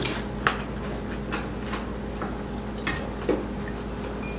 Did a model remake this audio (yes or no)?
no